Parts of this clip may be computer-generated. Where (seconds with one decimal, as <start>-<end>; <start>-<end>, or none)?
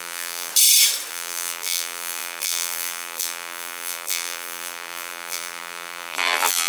0.0-0.5; 1.1-6.7